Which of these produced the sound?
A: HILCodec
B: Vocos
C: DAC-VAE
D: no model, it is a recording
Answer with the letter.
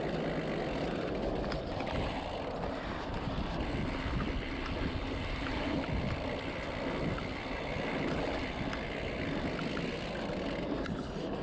D